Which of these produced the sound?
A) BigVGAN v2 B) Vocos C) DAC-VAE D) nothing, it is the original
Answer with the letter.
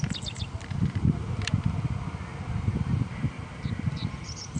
A